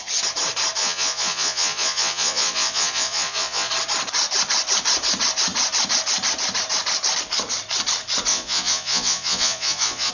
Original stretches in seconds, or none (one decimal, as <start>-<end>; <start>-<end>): 0.0-0.8; 3.7-8.3